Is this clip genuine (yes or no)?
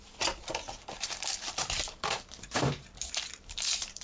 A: no